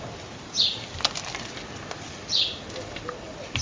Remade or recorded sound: recorded